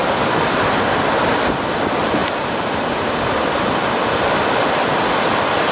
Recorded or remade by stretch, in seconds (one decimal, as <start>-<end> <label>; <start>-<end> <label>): 0.0-5.7 recorded